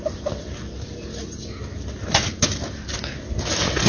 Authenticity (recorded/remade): recorded